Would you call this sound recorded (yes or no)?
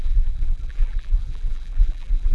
no